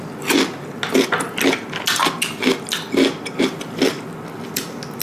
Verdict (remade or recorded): recorded